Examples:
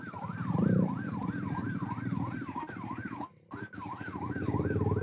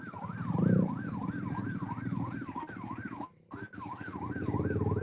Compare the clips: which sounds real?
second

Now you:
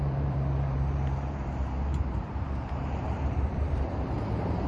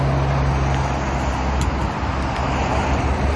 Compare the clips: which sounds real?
second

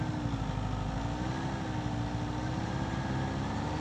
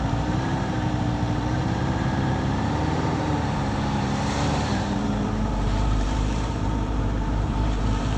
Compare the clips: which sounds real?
first